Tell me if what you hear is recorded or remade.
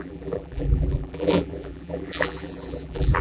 remade